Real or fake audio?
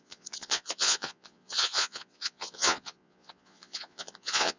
fake